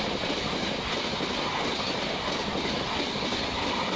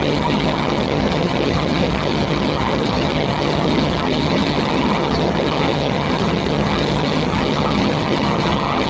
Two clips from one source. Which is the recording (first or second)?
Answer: first